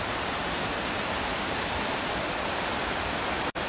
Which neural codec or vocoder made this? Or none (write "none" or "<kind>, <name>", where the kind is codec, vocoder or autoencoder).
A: vocoder, BigVGAN v2